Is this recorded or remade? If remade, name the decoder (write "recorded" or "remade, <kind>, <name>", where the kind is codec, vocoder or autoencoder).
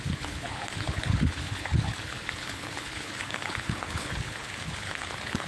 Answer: remade, codec, HILCodec